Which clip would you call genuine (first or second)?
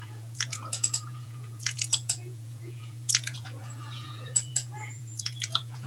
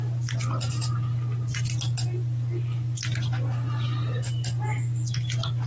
second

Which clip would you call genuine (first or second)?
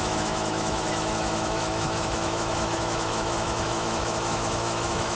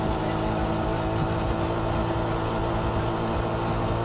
second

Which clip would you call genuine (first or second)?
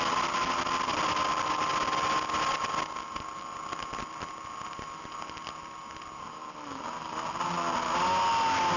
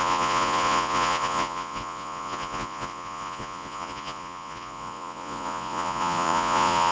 first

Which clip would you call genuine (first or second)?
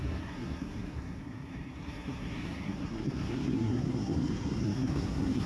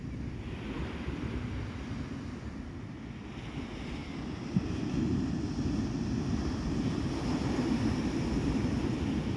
second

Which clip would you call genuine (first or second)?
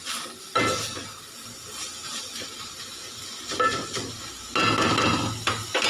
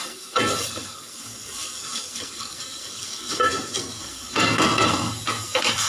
first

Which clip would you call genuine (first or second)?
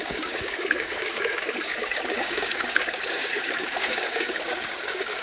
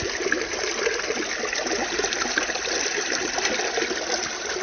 second